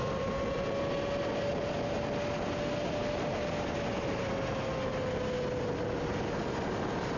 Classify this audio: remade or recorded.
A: recorded